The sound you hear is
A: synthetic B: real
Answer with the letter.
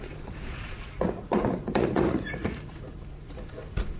A